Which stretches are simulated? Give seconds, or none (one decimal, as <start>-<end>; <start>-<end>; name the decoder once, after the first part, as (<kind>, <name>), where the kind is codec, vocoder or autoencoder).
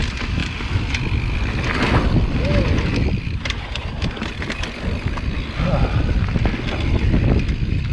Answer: none